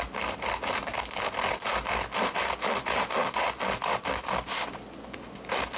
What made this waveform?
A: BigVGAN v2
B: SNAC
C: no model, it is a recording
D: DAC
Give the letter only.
C